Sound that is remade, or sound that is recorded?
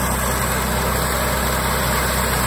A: recorded